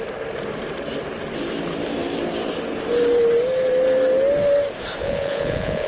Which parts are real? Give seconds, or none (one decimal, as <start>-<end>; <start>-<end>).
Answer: 0.0-5.0